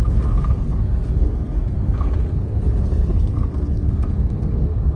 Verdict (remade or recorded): remade